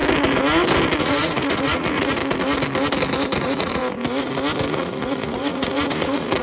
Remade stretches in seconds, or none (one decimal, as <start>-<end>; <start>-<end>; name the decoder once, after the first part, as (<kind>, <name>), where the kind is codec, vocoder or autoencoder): 1.0-2.2 (vocoder, Vocos); 3.4-3.8; 4.7-6.4